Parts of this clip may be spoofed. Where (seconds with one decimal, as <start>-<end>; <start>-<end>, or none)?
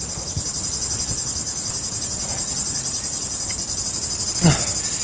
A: none